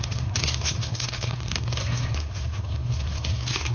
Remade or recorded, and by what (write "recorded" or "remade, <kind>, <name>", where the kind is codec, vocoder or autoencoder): remade, codec, SNAC